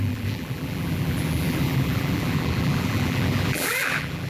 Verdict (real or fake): fake